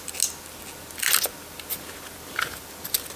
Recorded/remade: recorded